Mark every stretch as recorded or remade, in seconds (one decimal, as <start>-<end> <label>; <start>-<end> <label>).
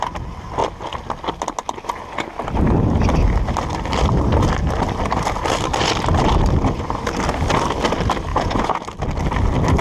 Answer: 0.0-8.3 recorded; 8.3-8.8 remade; 8.8-9.8 recorded